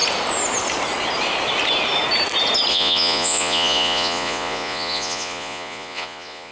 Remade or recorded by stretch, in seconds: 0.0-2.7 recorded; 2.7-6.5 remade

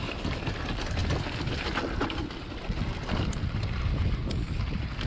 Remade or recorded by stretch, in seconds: 0.0-5.1 recorded

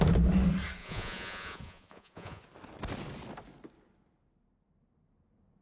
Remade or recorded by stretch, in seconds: 0.0-0.8 recorded; 0.8-2.4 remade; 2.4-5.6 recorded

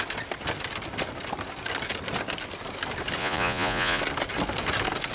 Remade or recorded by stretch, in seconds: 0.0-3.2 recorded; 3.2-4.0 remade; 4.0-5.1 recorded